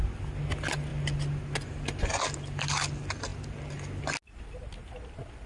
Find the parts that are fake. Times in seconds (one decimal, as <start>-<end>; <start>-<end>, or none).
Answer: none